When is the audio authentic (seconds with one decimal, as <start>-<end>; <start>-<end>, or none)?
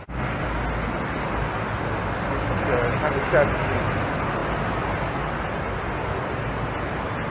0.0-7.3